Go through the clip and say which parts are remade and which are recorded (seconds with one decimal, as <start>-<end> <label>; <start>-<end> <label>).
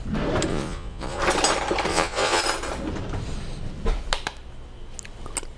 0.0-0.5 recorded; 0.5-1.2 remade; 1.2-1.9 recorded; 1.9-2.4 remade; 2.4-5.6 recorded